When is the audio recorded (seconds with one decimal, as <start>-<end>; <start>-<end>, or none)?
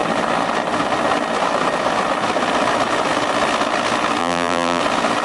0.0-4.2; 4.8-5.2